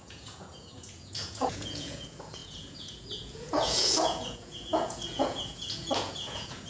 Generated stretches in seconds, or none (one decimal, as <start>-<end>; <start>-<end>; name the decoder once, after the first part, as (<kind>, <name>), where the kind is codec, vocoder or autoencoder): 0.0-6.7 (vocoder, Vocos)